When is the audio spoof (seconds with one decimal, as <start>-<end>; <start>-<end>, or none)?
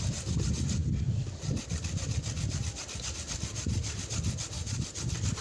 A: none